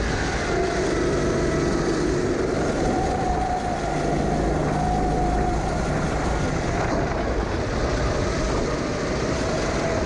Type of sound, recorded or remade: recorded